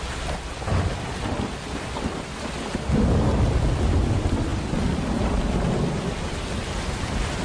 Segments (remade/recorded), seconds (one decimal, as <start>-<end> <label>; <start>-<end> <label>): 0.0-7.4 recorded